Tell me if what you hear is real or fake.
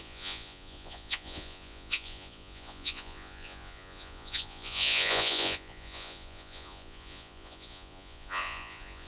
fake